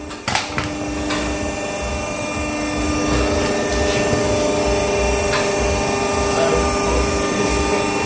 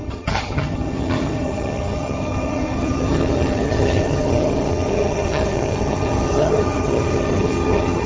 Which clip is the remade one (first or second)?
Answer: second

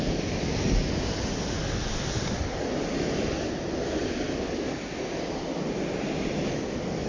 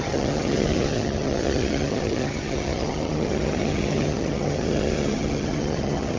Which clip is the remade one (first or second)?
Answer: second